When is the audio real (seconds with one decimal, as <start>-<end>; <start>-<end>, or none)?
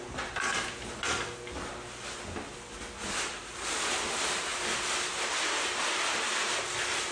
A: 0.0-7.1